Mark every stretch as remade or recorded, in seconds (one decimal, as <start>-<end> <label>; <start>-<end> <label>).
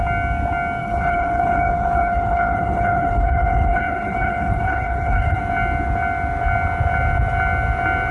0.0-0.8 recorded; 0.8-5.4 remade; 5.4-8.1 recorded